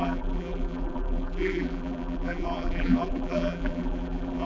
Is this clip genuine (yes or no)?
no